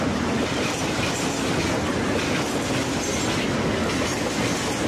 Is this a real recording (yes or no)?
yes